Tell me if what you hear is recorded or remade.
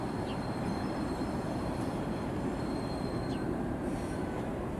remade